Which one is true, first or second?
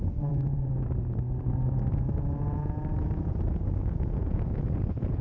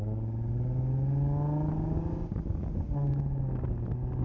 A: second